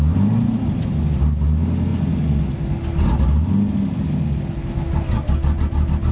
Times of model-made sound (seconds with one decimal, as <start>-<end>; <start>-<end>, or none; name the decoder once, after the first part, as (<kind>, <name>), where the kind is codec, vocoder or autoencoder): none